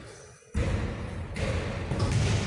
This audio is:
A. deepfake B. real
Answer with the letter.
B